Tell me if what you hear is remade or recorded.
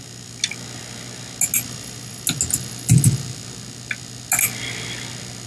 recorded